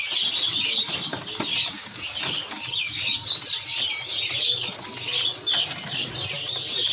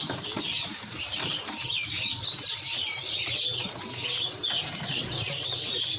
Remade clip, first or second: second